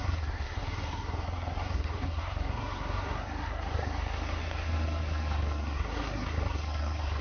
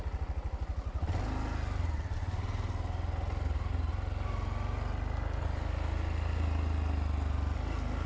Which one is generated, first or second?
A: first